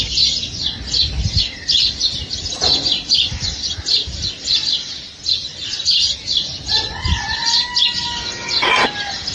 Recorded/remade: recorded